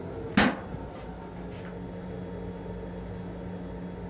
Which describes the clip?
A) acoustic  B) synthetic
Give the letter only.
A